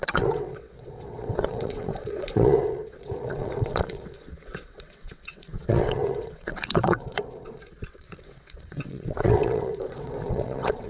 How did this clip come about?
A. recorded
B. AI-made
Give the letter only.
B